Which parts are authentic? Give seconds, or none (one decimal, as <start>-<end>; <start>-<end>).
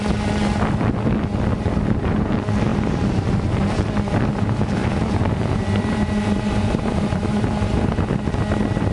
0.0-1.5; 2.3-2.7; 3.9-4.8; 7.9-8.9